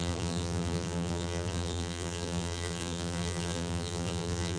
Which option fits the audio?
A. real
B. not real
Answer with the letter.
B